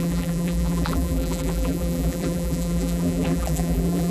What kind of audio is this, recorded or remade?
remade